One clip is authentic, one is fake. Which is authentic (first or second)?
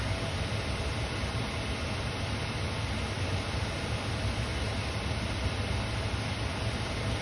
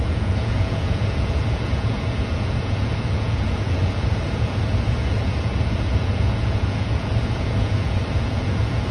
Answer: first